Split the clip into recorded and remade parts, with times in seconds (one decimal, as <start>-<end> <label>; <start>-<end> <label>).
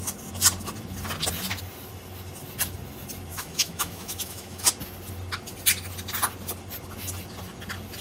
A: 0.0-3.3 recorded; 3.3-4.7 remade; 4.7-8.0 recorded